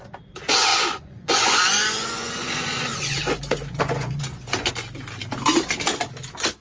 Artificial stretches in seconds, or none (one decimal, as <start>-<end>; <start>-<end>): 0.7-4.7